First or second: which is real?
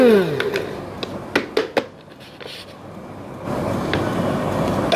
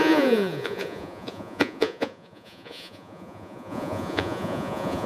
first